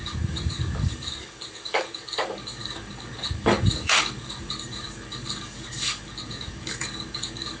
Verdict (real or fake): fake